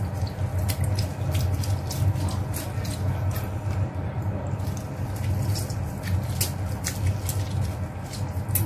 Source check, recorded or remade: recorded